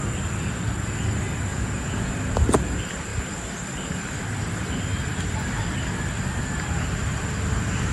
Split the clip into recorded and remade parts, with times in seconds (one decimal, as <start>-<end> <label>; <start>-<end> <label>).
0.0-1.5 recorded; 1.5-2.1 remade; 2.1-7.9 recorded